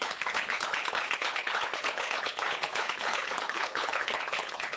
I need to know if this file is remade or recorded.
remade